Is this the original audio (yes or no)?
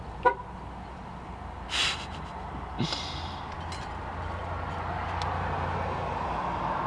yes